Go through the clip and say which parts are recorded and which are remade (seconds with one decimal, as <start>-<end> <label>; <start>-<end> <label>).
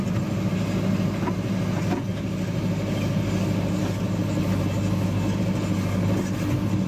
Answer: 0.0-6.9 recorded